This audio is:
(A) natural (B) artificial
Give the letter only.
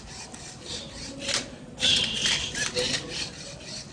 A